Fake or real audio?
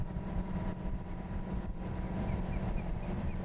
fake